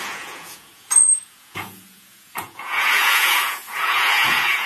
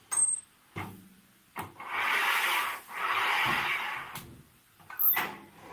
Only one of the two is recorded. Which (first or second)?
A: second